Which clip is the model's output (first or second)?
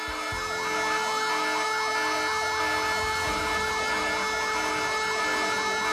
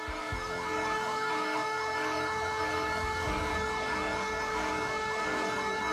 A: second